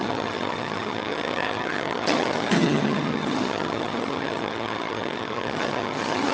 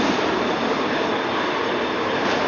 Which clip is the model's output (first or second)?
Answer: first